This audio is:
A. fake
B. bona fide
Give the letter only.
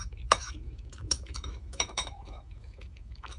A